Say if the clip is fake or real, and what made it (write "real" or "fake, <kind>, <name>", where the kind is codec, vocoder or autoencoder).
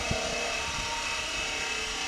real